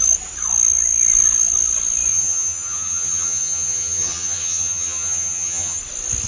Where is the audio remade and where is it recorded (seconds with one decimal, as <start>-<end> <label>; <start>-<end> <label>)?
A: 0.0-2.1 recorded; 2.1-5.8 remade; 5.8-6.3 recorded